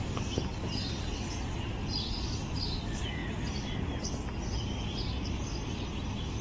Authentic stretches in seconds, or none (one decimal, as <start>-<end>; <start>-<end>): 0.0-6.4